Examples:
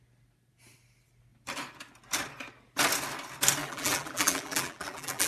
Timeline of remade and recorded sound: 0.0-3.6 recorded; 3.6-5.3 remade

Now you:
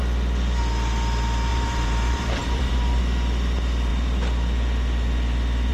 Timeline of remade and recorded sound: 0.0-1.5 recorded; 1.5-3.0 remade; 3.0-5.7 recorded